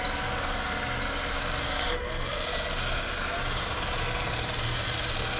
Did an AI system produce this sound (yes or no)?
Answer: no